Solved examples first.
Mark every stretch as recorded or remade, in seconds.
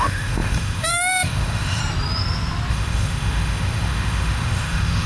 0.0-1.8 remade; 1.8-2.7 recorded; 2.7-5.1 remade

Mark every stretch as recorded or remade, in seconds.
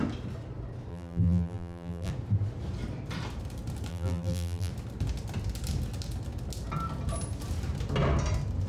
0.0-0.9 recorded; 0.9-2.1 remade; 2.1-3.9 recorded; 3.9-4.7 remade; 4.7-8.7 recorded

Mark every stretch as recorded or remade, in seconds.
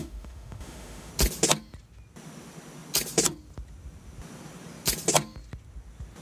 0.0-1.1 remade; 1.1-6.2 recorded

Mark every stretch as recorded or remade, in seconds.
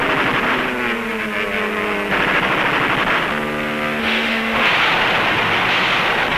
0.0-4.0 recorded; 4.0-4.7 remade; 4.7-6.4 recorded